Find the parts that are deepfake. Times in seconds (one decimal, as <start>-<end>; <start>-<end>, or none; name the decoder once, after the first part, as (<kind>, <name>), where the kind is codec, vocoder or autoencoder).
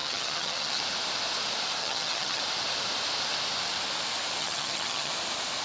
0.0-0.8 (vocoder, HiFi-GAN); 1.8-2.4; 4.4-5.1